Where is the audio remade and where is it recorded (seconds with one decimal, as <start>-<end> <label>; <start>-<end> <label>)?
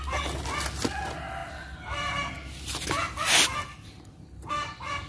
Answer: 0.0-5.1 recorded